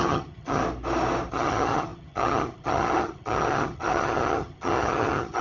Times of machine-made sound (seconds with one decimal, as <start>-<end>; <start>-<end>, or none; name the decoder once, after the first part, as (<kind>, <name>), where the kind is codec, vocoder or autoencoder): 0.0-0.6 (vocoder, HiFi-GAN); 1.3-5.4